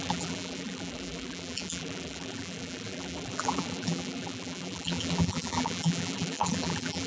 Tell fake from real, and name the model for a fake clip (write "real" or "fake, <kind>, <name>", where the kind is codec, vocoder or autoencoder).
fake, vocoder, BigVGAN v2